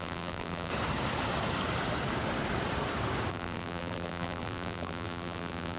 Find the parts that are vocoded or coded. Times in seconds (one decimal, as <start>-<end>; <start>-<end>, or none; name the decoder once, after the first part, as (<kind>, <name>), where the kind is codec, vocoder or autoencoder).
0.0-0.7 (vocoder, BigVGAN v2); 3.3-5.8

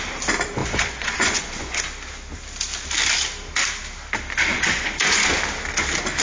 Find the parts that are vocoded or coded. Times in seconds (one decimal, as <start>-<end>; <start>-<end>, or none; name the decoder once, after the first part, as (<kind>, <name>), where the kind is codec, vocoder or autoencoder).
0.6-1.8 (vocoder, Vocos); 4.5-5.3

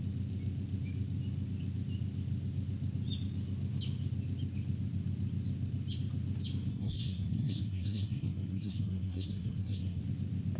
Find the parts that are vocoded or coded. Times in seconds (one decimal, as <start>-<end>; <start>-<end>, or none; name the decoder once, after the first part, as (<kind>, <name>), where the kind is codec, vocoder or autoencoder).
6.7-10.0 (codec, SNAC)